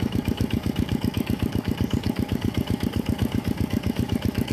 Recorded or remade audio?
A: remade